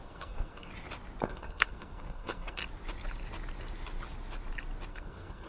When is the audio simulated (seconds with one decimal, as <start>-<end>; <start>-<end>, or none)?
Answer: 0.0-0.7; 1.2-2.6; 4.9-5.5